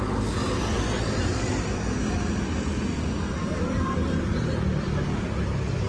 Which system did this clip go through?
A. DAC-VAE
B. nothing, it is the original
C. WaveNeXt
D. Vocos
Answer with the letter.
B